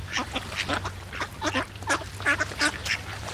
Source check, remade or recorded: recorded